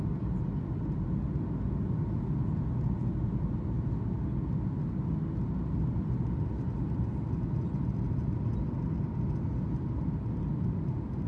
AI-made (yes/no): no